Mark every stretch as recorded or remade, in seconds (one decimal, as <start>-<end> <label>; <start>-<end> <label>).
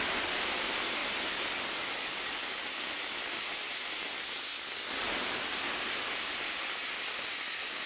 0.0-7.9 recorded